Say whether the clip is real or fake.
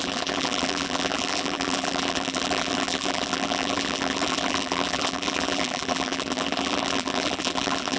fake